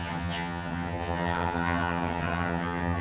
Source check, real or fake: fake